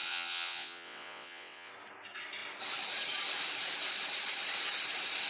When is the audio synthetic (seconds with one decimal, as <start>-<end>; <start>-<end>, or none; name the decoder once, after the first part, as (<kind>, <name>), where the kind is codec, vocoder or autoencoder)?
0.0-1.7 (vocoder, WaveNeXt)